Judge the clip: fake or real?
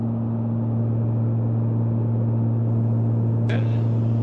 real